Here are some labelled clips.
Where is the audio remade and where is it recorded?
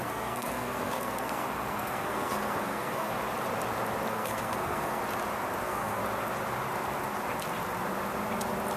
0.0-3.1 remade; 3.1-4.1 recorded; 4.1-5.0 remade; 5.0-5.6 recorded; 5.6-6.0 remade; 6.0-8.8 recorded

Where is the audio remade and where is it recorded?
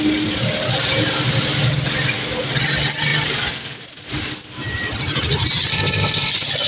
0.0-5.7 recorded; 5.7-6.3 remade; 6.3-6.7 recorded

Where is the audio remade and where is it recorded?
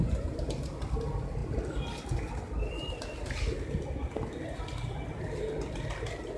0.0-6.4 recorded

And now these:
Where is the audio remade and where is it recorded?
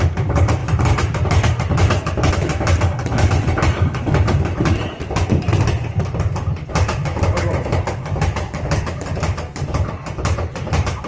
0.0-11.1 remade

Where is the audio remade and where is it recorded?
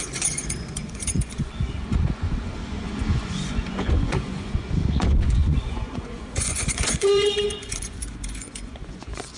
0.0-9.4 remade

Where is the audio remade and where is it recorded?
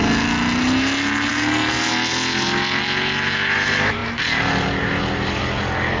0.0-6.0 recorded